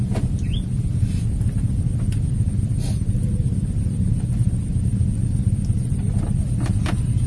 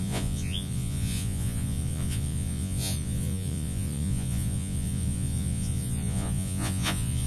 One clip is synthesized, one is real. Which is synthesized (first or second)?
second